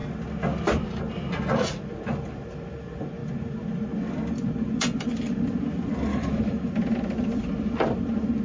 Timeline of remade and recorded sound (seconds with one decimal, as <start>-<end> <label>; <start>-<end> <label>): 0.0-6.1 recorded; 6.1-6.7 remade; 6.7-8.4 recorded